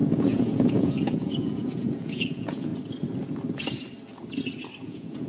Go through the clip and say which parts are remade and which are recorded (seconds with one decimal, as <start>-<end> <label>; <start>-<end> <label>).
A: 0.0-2.7 remade; 2.7-4.8 recorded; 4.8-5.3 remade